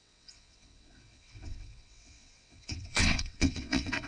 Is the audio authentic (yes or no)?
no